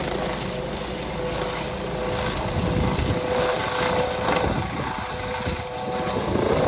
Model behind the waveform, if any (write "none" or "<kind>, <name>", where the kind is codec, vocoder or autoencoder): none